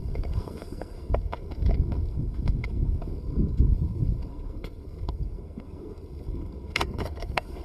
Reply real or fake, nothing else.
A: fake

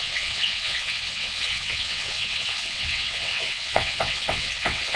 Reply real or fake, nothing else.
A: fake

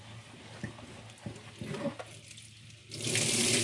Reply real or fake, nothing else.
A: real